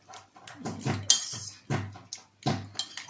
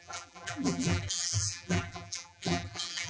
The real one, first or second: first